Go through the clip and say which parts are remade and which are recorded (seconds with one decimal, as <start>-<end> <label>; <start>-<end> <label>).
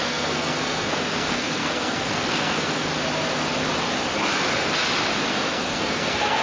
0.0-2.9 remade; 2.9-5.3 recorded; 5.3-6.4 remade